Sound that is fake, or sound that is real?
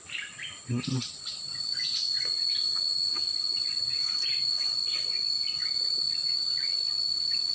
real